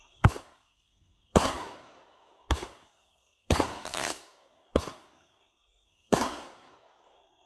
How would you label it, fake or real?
fake